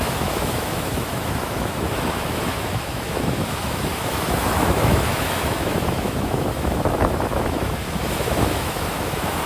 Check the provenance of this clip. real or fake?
fake